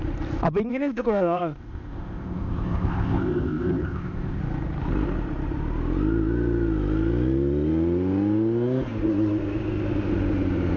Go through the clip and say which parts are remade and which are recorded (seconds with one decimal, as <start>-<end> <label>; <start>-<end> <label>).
0.0-0.7 recorded; 0.7-4.4 remade; 4.4-10.8 recorded